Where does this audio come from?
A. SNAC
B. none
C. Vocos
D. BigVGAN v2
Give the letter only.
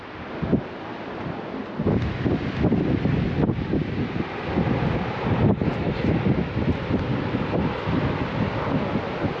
B